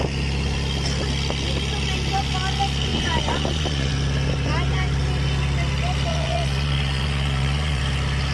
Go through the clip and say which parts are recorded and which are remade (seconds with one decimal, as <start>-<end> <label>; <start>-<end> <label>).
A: 0.0-2.9 recorded; 2.9-3.9 remade; 3.9-6.1 recorded; 6.1-7.8 remade; 7.8-8.3 recorded